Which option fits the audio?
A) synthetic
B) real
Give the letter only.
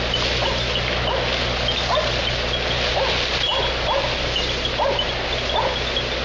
B